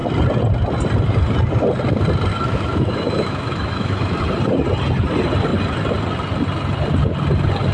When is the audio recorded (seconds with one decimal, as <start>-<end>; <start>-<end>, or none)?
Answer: 0.0-2.3; 4.2-7.7